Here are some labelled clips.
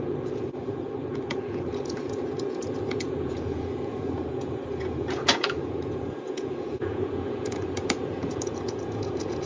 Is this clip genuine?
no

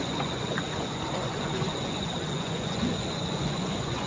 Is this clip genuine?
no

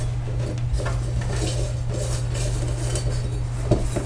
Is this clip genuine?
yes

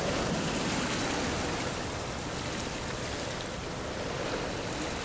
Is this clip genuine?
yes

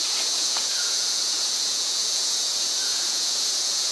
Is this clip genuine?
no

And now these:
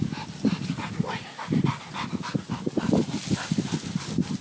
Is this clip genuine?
yes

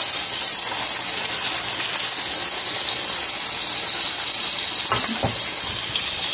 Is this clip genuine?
yes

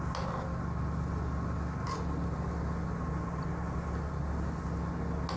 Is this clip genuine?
yes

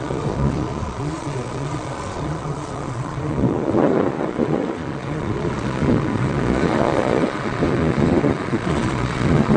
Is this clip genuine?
no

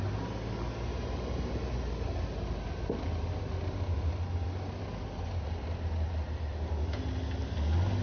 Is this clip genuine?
yes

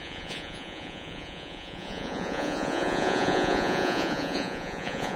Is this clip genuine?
no